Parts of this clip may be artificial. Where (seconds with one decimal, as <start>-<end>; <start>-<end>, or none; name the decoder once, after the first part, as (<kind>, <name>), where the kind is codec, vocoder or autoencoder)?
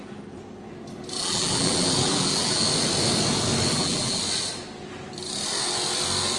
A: 1.2-2.6 (vocoder, BigVGAN v2); 3.7-4.2